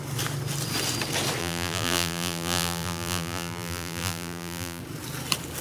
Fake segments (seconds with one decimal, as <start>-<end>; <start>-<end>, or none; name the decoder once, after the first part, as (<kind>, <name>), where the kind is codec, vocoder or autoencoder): 1.4-4.8 (vocoder, BigVGAN v2)